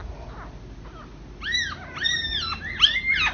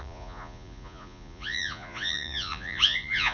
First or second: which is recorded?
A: first